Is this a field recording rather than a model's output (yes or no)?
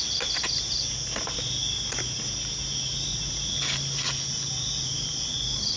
yes